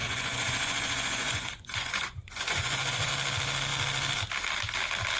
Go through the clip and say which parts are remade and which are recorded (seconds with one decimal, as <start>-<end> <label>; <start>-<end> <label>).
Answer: 0.0-3.1 remade; 3.1-5.2 recorded